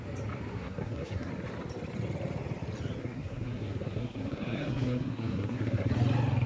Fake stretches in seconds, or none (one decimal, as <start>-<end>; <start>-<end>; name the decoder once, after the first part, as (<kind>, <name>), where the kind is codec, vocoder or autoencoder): 0.5-1.3 (codec, SNAC); 3.0-5.9